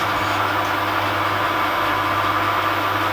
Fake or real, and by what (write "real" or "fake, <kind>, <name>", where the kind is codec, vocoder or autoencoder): real